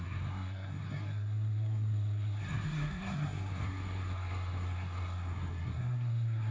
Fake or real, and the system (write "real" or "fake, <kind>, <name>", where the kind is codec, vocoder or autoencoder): fake, codec, SNAC